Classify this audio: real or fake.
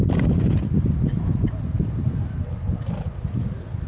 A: real